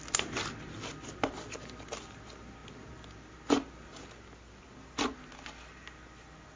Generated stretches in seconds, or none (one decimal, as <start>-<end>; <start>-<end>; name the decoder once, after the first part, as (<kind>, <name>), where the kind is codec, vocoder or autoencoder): none